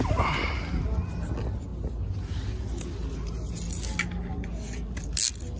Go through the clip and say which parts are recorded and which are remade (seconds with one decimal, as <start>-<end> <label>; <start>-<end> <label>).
0.0-5.6 recorded